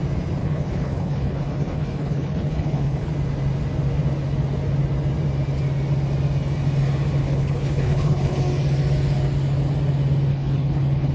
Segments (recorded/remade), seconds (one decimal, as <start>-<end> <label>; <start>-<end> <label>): 0.0-0.4 recorded; 0.4-3.1 remade; 3.1-7.2 recorded; 7.2-8.4 remade; 8.4-10.3 recorded; 10.3-11.1 remade